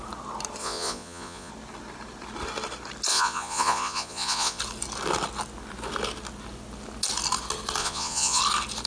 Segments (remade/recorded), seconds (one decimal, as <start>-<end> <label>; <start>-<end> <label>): 0.0-0.6 recorded; 0.6-1.5 remade; 1.5-3.1 recorded; 3.1-4.6 remade; 4.6-7.8 recorded; 7.8-8.4 remade; 8.4-8.9 recorded